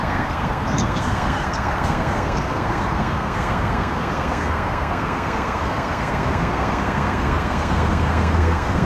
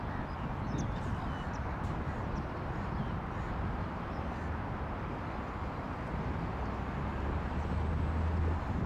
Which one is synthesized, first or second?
first